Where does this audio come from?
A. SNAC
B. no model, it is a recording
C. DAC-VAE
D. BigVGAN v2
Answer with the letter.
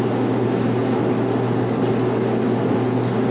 B